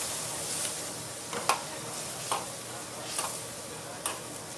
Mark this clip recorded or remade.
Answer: recorded